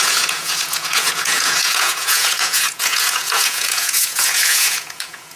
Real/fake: fake